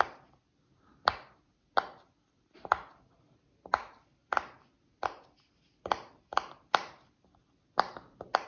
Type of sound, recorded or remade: recorded